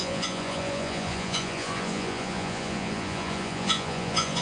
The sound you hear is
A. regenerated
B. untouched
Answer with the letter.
A